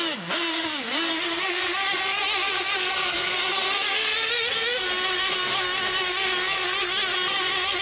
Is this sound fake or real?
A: fake